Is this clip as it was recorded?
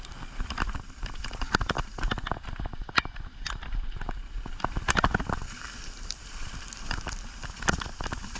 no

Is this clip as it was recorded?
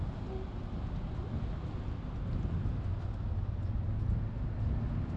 yes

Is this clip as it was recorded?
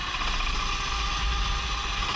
yes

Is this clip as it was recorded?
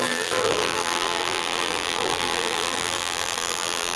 no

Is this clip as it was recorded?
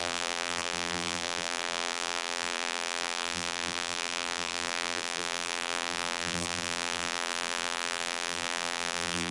no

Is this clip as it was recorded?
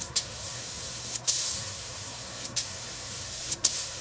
no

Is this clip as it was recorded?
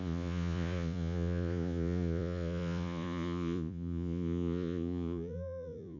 no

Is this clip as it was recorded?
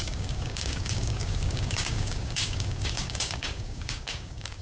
no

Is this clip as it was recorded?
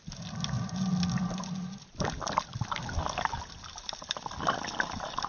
yes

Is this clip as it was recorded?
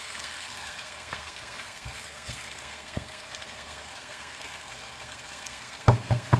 no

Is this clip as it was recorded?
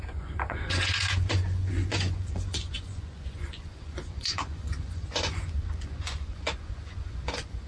no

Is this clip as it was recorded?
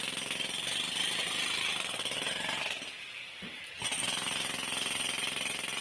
yes